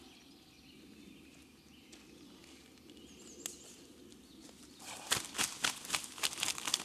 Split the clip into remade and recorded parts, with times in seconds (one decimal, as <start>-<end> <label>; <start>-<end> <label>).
0.0-6.8 recorded